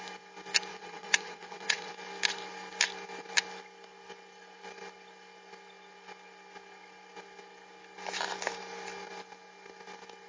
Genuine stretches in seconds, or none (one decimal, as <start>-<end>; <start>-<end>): 0.0-0.7; 1.9-10.3